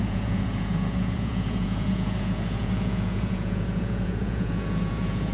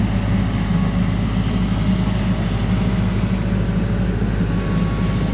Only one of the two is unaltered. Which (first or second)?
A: second